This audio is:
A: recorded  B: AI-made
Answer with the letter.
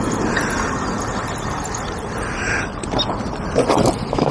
A